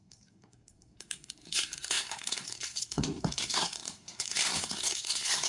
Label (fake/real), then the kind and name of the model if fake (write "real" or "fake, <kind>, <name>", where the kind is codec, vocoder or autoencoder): fake, codec, SNAC